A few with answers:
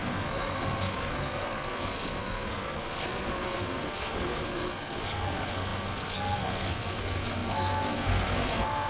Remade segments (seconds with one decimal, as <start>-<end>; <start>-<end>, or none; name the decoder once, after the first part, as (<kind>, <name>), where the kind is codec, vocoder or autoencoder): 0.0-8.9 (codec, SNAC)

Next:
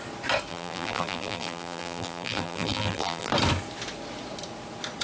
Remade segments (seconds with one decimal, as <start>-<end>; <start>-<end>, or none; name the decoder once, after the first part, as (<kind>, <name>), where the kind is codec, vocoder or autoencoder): 0.5-3.3 (vocoder, BigVGAN v2)

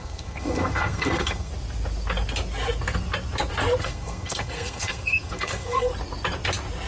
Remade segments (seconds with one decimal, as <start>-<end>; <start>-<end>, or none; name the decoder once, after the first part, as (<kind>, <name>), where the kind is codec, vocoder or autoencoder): 0.0-1.5 (codec, SNAC); 3.8-5.9

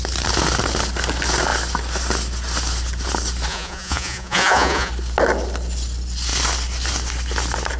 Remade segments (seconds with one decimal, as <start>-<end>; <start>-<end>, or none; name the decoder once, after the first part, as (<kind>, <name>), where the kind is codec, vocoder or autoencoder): 3.5-4.9 (vocoder, Vocos)